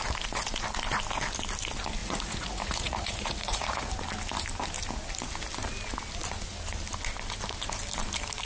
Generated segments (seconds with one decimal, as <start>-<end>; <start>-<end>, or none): 2.0-3.9